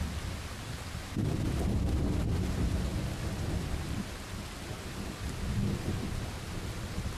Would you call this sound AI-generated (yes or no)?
no